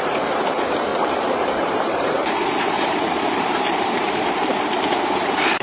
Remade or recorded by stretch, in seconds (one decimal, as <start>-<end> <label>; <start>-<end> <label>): 0.0-5.6 remade